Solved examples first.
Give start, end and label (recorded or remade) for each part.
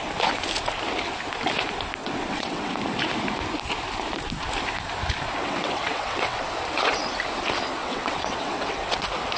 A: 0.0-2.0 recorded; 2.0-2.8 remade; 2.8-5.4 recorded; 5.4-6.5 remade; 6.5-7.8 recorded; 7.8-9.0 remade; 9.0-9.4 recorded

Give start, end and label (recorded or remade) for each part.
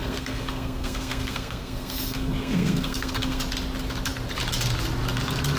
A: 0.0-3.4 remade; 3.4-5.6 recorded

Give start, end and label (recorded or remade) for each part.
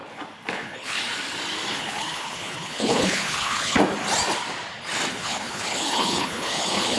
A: 0.0-0.5 recorded; 0.5-1.0 remade; 1.0-1.7 recorded; 1.7-3.8 remade; 3.8-5.1 recorded; 5.1-7.0 remade